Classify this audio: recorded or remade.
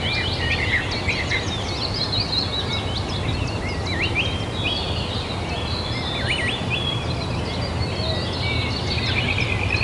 recorded